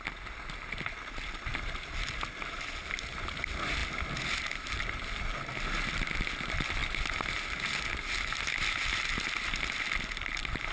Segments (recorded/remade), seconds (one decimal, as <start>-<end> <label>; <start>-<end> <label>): 0.0-10.7 recorded